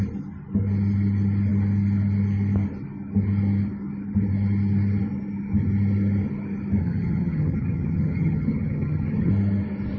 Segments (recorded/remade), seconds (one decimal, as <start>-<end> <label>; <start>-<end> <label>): 0.0-6.8 recorded; 6.8-9.3 remade; 9.3-10.0 recorded